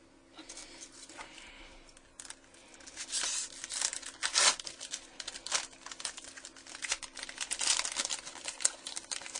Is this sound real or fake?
real